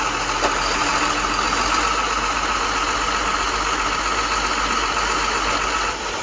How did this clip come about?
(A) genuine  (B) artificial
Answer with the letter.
A